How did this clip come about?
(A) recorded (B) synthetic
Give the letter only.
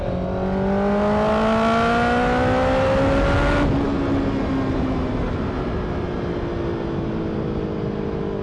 A